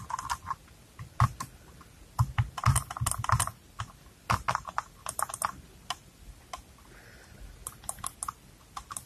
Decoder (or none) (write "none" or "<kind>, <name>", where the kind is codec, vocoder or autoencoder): none